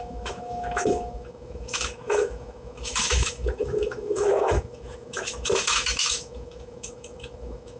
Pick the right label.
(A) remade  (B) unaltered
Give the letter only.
A